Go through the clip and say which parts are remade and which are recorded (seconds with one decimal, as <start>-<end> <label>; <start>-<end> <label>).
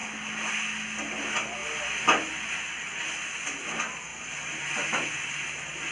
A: 0.0-5.9 recorded